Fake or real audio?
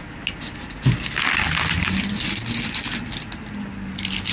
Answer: real